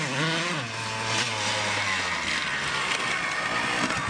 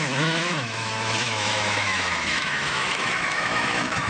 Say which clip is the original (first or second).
first